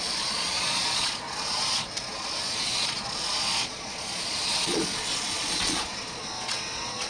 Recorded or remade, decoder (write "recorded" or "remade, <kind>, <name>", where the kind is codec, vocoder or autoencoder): remade, vocoder, Vocos